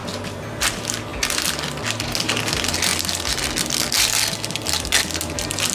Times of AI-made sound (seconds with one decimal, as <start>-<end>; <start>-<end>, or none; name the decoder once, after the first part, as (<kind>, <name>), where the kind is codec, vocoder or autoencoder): none